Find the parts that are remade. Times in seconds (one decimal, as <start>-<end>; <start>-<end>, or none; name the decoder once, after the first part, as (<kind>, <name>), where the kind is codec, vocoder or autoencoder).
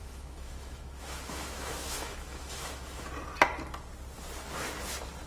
0.0-3.1 (autoencoder, DAC-VAE)